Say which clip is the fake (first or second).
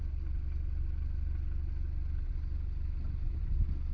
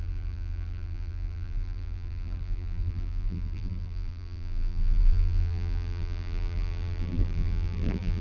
second